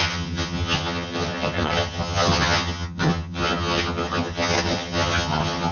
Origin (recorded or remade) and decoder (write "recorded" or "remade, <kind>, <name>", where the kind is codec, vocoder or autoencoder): remade, vocoder, HiFi-GAN